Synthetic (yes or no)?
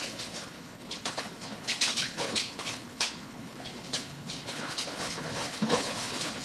yes